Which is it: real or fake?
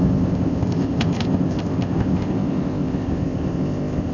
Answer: fake